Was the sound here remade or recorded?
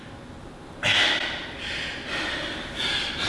recorded